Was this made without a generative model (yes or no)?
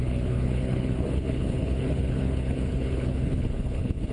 no